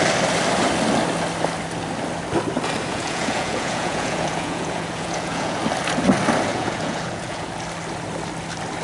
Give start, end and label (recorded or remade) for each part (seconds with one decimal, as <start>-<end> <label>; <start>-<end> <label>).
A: 0.0-2.9 recorded; 2.9-5.6 remade; 5.6-6.5 recorded; 6.5-7.5 remade; 7.5-8.8 recorded